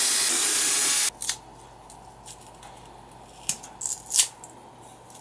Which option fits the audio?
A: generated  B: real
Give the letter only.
B